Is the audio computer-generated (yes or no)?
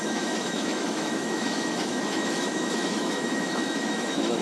yes